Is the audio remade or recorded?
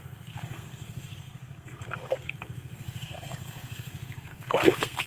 remade